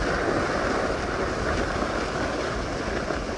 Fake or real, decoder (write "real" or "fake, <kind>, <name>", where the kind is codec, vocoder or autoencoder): real